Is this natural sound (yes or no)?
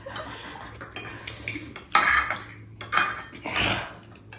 yes